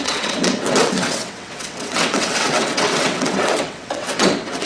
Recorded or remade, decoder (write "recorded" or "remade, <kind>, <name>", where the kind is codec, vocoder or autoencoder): remade, vocoder, WaveNeXt